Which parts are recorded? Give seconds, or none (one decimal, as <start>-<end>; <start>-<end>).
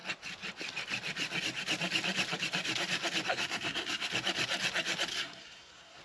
0.0-3.3; 4.1-5.1